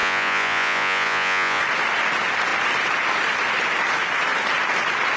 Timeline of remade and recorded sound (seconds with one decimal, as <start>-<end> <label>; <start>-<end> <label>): 0.0-1.6 remade; 1.6-5.2 recorded